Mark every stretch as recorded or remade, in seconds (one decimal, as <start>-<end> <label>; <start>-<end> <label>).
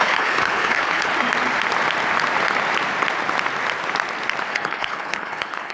0.0-1.1 remade; 1.1-4.5 recorded; 4.5-5.7 remade